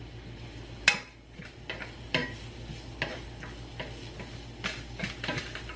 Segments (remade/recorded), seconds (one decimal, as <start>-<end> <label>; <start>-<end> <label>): 0.0-5.8 recorded

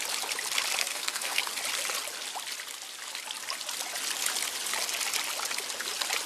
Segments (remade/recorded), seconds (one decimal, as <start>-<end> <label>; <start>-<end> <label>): 0.0-0.8 recorded; 0.8-1.4 remade; 1.4-6.3 recorded

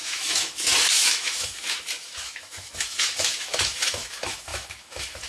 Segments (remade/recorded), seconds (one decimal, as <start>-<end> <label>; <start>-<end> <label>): 0.0-5.3 remade

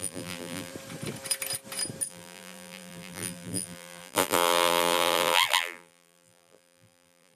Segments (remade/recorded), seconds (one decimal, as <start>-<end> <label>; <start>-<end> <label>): 0.0-0.7 remade; 0.7-2.1 recorded; 2.1-7.4 remade

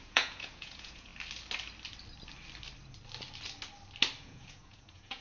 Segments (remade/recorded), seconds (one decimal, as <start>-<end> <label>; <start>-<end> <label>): 0.0-1.1 remade; 1.1-4.2 recorded; 4.2-5.2 remade

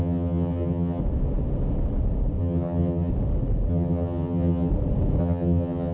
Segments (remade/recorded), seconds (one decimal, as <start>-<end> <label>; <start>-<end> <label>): 0.0-1.0 remade; 1.0-2.4 recorded; 2.4-3.1 remade; 3.1-3.7 recorded; 3.7-4.7 remade; 4.7-5.2 recorded; 5.2-5.9 remade

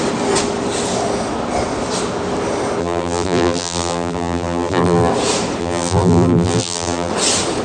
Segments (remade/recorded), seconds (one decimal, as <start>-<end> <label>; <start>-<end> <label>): 0.0-2.8 recorded; 2.8-5.1 remade; 5.1-5.6 recorded; 5.6-7.1 remade; 7.1-7.6 recorded